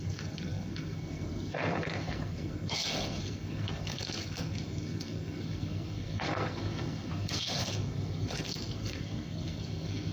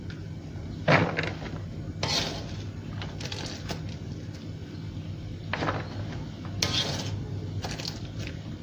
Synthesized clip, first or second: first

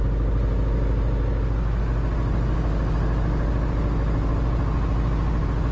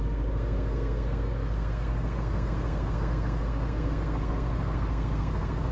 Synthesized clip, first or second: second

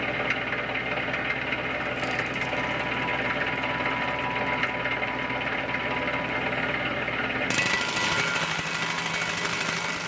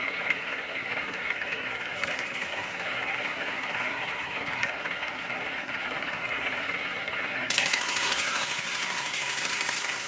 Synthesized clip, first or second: second